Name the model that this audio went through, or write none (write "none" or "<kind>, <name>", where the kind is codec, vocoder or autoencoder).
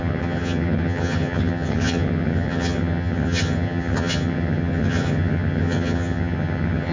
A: vocoder, HiFi-GAN